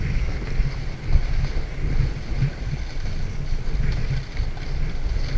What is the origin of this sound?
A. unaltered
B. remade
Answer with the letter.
A